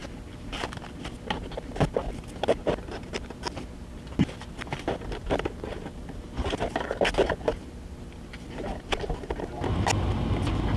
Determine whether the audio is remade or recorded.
recorded